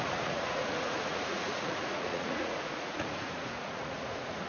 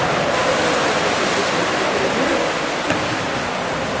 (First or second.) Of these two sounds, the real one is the second